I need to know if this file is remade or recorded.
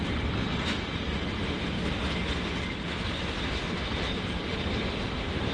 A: recorded